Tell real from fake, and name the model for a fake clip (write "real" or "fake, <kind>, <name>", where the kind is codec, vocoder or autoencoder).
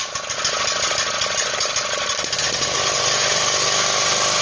real